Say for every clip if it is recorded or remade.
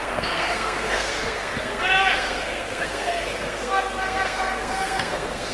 remade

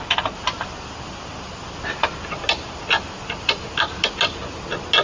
recorded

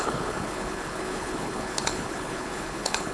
remade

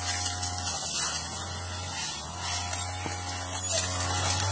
recorded